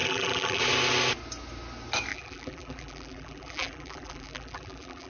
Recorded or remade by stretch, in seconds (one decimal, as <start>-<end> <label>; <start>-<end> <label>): 0.0-0.6 remade; 0.6-2.1 recorded; 2.1-5.1 remade

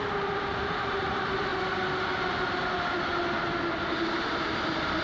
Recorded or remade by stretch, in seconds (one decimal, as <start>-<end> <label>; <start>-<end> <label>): 0.0-1.5 remade; 1.5-4.5 recorded; 4.5-5.0 remade